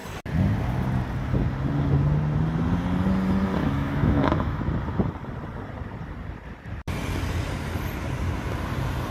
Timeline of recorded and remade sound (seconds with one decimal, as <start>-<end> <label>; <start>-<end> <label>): 0.0-3.6 recorded; 3.6-4.6 remade; 4.6-9.1 recorded